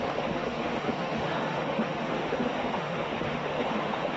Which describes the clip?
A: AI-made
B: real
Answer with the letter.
A